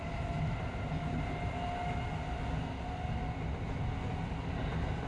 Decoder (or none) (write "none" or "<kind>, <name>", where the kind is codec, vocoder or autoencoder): none